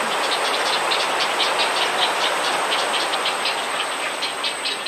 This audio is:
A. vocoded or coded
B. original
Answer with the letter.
B